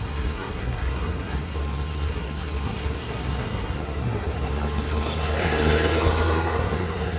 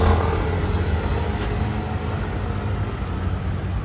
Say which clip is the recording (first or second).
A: second